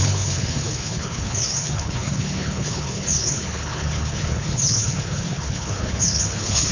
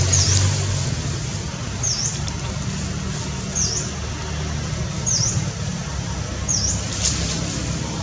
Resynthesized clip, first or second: first